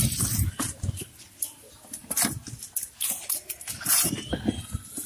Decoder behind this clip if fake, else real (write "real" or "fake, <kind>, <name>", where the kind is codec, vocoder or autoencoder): real